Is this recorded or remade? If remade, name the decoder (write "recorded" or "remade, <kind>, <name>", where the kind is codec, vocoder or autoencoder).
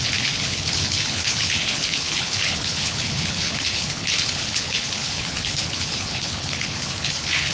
remade, codec, HILCodec